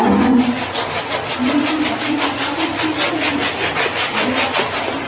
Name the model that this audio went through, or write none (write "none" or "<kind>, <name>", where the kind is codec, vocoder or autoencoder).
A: none